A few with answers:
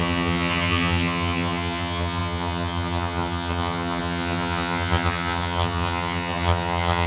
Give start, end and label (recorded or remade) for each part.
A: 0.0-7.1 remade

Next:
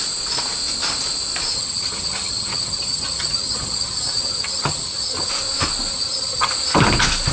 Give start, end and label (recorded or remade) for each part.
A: 0.0-1.5 recorded; 1.5-5.3 remade; 5.3-5.9 recorded; 5.9-6.5 remade; 6.5-7.3 recorded

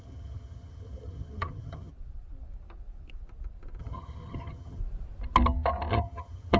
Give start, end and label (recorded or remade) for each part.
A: 0.0-1.9 remade; 1.9-3.8 recorded; 3.8-4.8 remade; 4.8-5.9 recorded; 5.9-6.6 remade